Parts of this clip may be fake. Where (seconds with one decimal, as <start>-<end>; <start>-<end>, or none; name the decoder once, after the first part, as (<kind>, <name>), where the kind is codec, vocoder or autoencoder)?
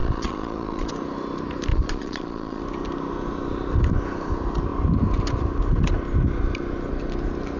0.0-0.9 (vocoder, Vocos); 1.7-2.6